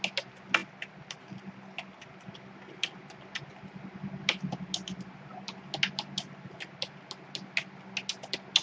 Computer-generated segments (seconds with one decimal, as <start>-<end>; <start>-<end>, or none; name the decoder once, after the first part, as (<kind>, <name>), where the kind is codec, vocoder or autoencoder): none